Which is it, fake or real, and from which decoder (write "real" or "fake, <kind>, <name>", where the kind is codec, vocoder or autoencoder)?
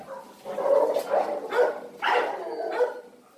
real